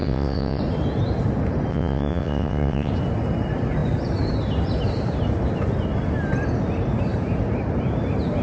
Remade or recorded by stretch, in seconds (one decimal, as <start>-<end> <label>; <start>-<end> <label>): 0.0-0.6 remade; 0.6-1.7 recorded; 1.7-2.9 remade; 2.9-8.4 recorded